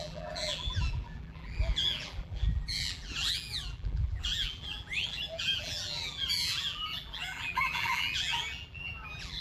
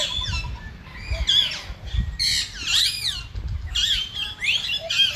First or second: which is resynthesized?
first